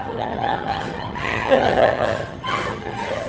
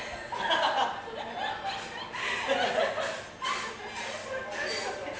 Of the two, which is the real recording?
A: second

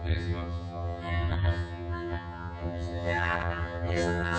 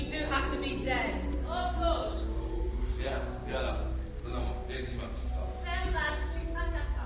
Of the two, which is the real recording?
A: second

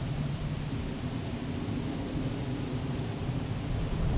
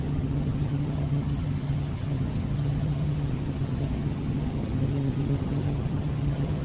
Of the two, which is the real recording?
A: first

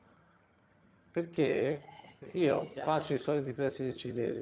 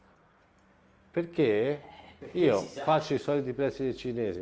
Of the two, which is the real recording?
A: second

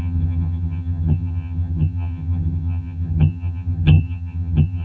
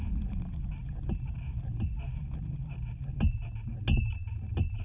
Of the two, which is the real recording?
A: second